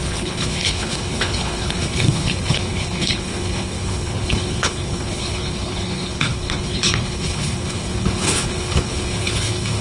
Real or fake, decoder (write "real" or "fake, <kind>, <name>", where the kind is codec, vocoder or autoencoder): fake, codec, HILCodec